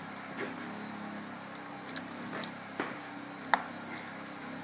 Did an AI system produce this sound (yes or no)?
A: no